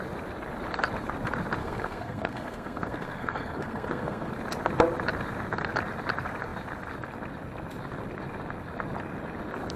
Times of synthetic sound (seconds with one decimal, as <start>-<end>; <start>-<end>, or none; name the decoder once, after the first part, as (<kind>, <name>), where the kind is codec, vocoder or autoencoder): 1.6-4.3 (codec, SNAC)